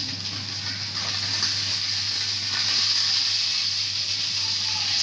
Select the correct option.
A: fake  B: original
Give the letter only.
B